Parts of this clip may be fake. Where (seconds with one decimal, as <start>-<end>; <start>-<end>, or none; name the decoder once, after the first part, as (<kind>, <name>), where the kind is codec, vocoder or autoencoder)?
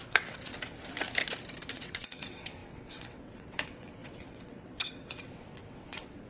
0.0-0.5 (vocoder, WaveNeXt); 1.7-6.3